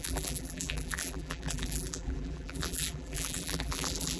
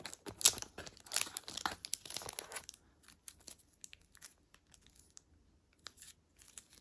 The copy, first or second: first